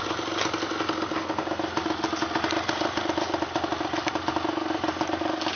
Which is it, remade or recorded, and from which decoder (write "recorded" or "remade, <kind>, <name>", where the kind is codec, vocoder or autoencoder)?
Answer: recorded